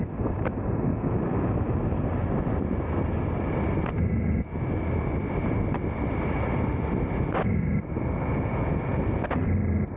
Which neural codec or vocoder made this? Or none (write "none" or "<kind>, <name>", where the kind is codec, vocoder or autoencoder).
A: none